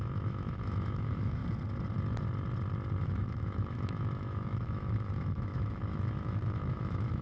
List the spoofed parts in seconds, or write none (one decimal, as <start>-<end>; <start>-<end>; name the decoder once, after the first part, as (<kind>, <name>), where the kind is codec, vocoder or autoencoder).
0.0-1.4 (autoencoder, DAC-VAE); 3.0-7.2

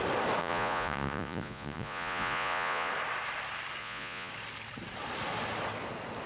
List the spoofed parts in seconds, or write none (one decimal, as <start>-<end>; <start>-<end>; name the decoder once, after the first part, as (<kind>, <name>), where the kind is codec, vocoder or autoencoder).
0.4-2.9 (vocoder, Vocos); 3.8-4.3

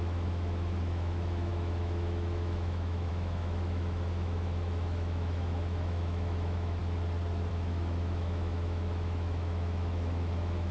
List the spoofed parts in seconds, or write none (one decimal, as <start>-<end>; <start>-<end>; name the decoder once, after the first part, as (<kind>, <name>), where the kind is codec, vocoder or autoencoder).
0.0-6.8 (autoencoder, DAC-VAE); 7.5-10.7

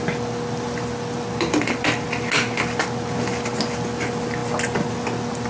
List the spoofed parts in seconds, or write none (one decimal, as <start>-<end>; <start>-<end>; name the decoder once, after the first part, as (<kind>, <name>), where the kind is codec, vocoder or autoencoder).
none

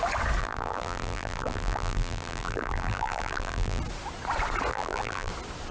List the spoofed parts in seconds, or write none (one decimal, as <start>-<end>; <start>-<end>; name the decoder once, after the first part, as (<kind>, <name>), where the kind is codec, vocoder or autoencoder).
0.4-3.8 (vocoder, BigVGAN v2); 4.7-5.3